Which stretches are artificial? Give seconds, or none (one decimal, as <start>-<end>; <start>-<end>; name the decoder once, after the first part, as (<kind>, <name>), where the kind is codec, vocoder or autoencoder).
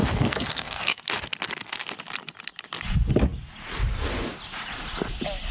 0.0-1.0 (codec, SNAC)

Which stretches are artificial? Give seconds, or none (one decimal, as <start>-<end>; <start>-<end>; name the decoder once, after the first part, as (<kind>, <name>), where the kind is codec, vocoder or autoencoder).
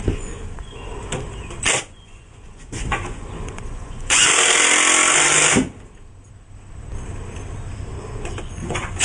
0.0-0.9 (vocoder, Vocos); 1.8-4.3; 8.4-9.0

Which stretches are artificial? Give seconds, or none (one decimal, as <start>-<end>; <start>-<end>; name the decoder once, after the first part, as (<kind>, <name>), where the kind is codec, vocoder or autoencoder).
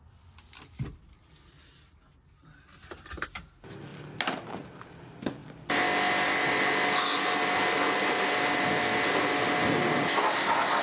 none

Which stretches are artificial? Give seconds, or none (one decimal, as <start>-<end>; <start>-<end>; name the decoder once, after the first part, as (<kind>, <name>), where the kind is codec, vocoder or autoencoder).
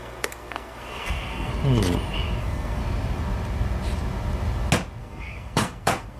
0.0-1.5 (codec, SNAC); 2.4-2.8; 5.0-6.2